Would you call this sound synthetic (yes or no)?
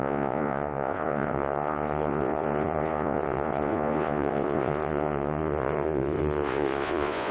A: yes